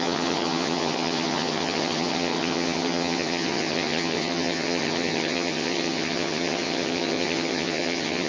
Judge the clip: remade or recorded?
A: remade